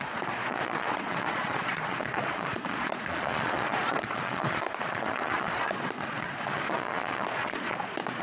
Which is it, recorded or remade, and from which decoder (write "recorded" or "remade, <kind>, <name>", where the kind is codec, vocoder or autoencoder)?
remade, vocoder, Vocos